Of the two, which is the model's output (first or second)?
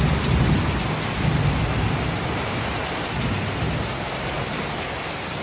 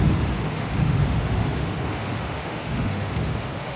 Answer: second